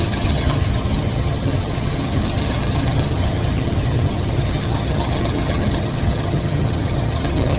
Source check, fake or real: fake